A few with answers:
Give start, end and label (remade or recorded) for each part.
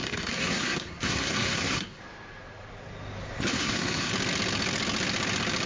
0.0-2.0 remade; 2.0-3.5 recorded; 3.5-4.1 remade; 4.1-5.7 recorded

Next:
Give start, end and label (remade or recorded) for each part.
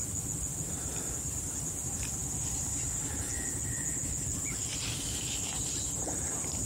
0.0-6.7 recorded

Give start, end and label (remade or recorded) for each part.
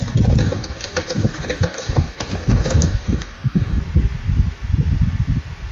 0.0-0.4 recorded; 0.4-3.8 remade; 3.8-5.7 recorded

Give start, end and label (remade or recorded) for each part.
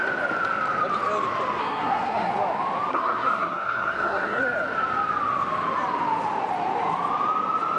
0.0-1.6 recorded; 1.6-2.3 remade; 2.3-2.9 recorded; 2.9-4.4 remade; 4.4-7.8 recorded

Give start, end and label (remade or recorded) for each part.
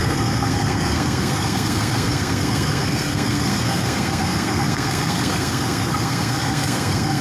0.0-7.2 remade